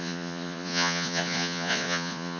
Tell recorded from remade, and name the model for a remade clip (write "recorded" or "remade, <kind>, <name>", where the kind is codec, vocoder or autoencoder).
remade, vocoder, Vocos